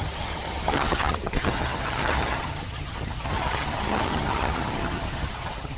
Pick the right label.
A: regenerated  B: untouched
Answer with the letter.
A